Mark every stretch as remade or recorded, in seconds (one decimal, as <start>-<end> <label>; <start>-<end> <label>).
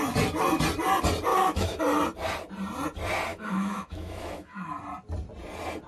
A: 0.0-1.3 recorded; 1.3-1.8 remade; 1.8-3.3 recorded; 3.3-4.8 remade; 4.8-5.9 recorded